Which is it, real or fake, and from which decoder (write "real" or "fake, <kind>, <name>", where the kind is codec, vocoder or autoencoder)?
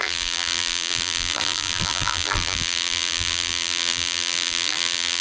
fake, vocoder, BigVGAN v2